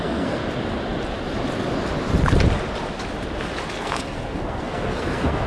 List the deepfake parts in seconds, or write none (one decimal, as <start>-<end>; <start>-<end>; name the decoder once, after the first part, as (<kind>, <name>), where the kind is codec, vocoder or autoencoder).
0.0-0.4 (codec, SNAC); 3.7-5.5